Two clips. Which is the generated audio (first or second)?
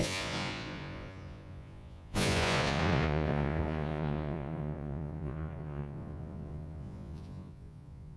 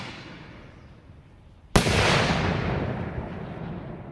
first